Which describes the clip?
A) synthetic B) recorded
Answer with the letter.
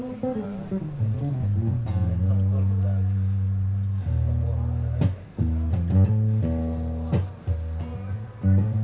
B